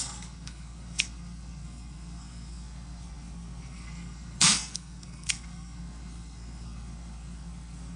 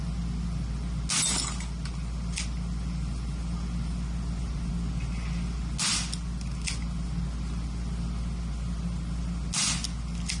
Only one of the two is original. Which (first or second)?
second